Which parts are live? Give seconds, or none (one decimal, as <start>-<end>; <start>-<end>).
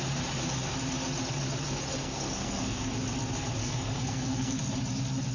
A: 0.0-2.0; 2.9-3.6; 4.6-5.3